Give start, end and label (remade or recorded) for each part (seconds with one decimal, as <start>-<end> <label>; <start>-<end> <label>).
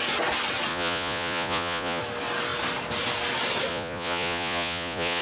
0.0-0.7 recorded; 0.7-2.0 remade; 2.0-3.7 recorded; 3.7-5.2 remade